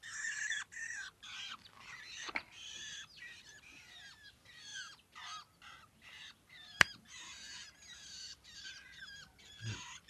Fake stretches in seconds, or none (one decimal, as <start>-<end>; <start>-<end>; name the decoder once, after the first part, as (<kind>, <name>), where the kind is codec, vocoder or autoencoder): none